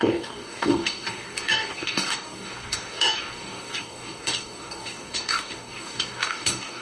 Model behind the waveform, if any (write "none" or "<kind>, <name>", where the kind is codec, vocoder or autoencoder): codec, DAC